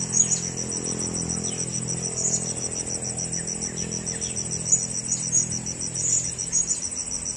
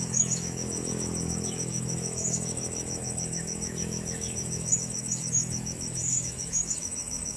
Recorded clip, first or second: first